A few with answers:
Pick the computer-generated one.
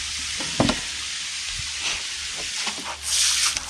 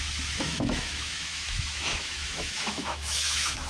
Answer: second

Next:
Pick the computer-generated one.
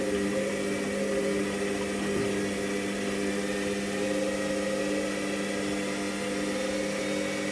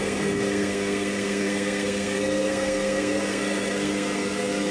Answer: second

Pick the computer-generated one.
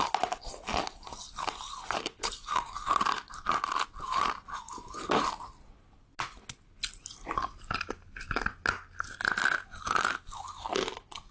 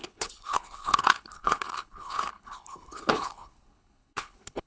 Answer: second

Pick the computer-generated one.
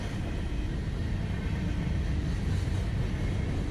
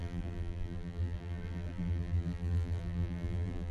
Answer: second